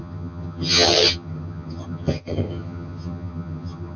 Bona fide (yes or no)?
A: no